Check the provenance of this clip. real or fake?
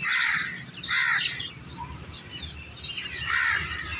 real